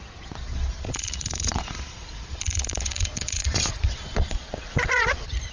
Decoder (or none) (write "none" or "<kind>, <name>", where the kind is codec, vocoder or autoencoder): vocoder, Vocos